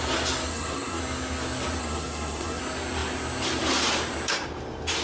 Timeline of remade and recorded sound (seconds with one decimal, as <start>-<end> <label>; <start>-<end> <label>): 0.0-0.5 recorded; 0.5-1.0 remade; 1.0-1.8 recorded; 1.8-2.6 remade; 2.6-5.0 recorded